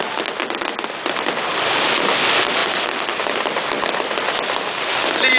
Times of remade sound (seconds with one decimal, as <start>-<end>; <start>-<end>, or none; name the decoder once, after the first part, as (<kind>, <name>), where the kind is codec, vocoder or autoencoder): none

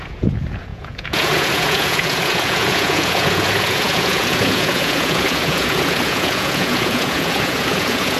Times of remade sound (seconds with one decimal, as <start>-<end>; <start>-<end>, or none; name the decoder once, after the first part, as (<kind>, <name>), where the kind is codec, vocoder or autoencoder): 0.0-8.2 (vocoder, Vocos)

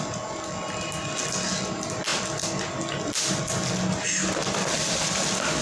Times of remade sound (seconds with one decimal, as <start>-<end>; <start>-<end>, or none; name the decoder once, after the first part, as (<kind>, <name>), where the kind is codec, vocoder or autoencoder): none

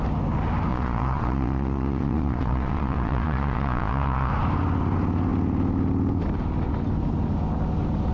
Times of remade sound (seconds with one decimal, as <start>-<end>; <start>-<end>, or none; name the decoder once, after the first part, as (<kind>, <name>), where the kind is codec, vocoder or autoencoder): 0.7-4.3 (vocoder, Vocos)